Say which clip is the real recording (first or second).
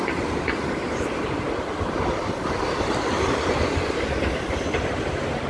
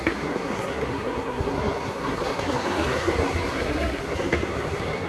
first